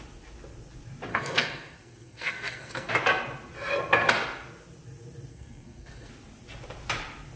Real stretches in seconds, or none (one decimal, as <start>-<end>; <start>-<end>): 0.0-1.1; 2.9-5.3; 6.1-7.4